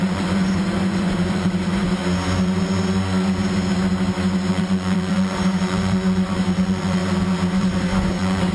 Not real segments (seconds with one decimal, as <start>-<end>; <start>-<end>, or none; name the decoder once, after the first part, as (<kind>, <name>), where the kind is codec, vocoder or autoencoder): 0.0-2.0 (vocoder, Vocos); 4.5-7.0; 7.6-8.5